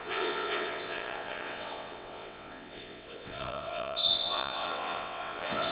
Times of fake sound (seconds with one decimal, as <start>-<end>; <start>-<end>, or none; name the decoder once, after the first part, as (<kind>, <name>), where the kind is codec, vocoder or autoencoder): 0.0-5.7 (vocoder, WaveNeXt)